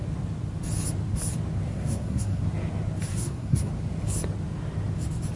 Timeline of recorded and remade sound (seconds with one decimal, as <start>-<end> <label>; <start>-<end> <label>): 0.0-1.7 recorded; 1.7-2.4 remade; 2.4-3.1 recorded; 3.1-3.7 remade; 3.7-5.4 recorded